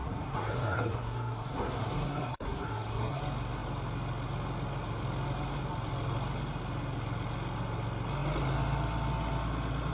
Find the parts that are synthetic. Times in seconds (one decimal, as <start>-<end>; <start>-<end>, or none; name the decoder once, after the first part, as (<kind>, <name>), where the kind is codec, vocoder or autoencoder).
0.0-3.2 (codec, SNAC)